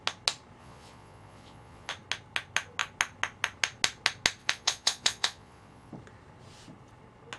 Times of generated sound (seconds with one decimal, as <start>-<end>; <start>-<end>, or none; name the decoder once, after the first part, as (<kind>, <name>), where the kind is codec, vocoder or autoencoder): 0.6-1.9 (vocoder, Vocos); 4.4-5.9